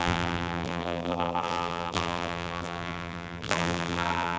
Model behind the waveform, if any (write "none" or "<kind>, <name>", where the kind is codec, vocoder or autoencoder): vocoder, BigVGAN v2